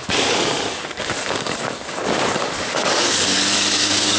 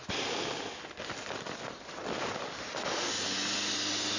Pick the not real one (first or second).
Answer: first